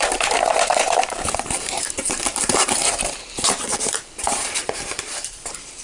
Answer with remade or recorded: remade